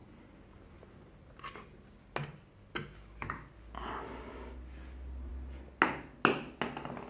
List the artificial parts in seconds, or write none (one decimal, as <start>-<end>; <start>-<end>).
none